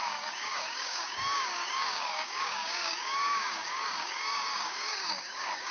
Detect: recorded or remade remade